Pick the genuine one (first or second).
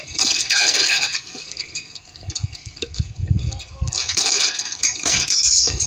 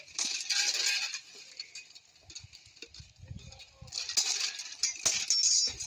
second